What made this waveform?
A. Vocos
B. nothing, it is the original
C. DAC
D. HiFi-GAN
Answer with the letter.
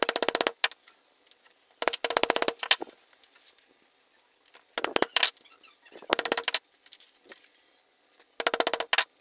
B